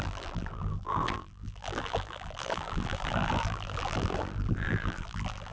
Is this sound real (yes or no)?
no